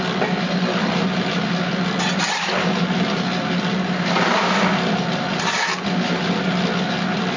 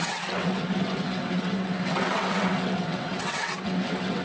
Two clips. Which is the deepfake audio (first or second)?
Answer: second